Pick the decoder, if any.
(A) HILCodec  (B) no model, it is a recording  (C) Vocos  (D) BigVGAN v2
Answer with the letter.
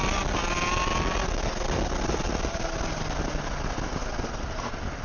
B